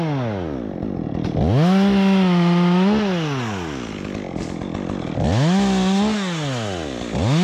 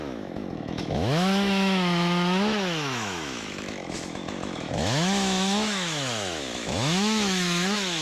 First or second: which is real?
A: first